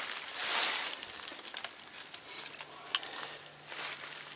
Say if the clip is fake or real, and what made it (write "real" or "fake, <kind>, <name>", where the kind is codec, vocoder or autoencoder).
real